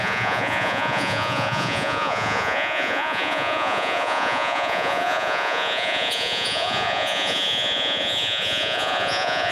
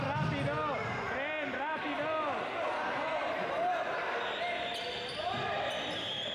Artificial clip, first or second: first